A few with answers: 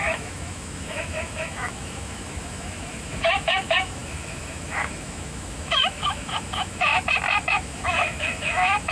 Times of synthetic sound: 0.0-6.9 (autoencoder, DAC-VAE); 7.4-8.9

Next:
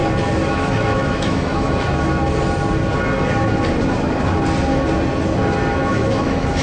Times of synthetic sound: 0.5-1.9 (autoencoder, DAC-VAE); 5.9-6.6